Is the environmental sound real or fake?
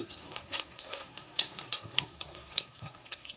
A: fake